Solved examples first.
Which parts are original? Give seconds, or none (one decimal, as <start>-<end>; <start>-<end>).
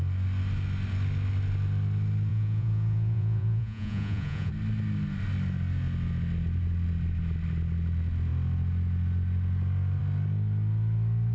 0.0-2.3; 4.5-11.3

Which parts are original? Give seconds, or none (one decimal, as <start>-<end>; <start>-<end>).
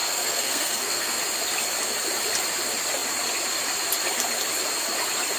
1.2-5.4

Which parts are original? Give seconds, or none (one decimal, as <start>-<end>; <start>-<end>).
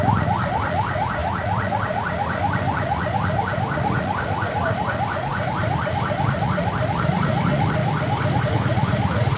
7.8-8.4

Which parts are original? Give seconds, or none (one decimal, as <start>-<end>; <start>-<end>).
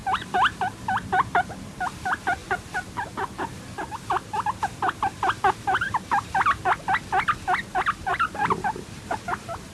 2.4-7.6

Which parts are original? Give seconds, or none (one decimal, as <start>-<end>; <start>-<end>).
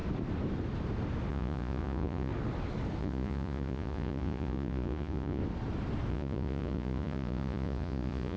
0.0-1.3; 2.3-3.0; 5.4-6.1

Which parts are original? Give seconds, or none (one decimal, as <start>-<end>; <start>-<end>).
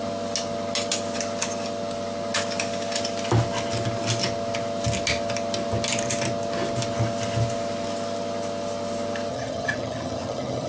0.0-9.3